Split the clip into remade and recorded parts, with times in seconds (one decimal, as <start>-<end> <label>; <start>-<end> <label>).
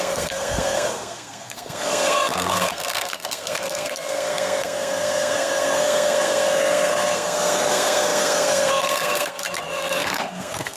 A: 0.0-10.8 remade